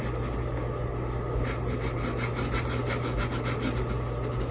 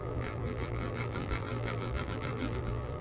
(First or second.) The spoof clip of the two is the second